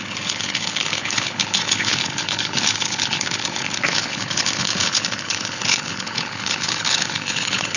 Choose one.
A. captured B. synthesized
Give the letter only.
B